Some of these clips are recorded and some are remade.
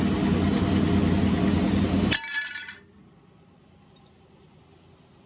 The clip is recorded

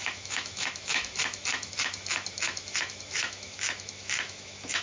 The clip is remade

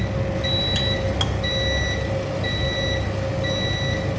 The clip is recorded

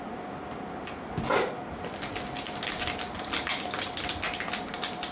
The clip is recorded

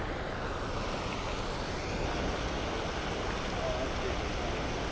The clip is recorded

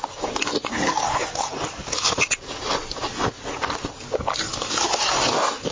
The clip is recorded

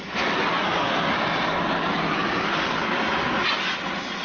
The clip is remade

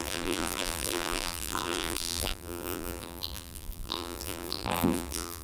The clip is remade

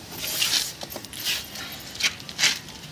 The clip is recorded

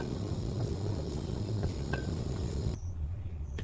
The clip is remade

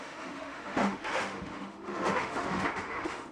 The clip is remade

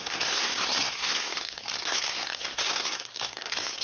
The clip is remade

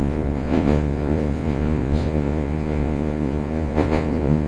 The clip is remade